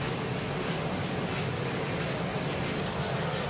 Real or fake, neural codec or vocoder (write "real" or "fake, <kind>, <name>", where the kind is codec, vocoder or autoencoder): real